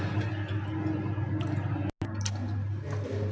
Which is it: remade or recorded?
recorded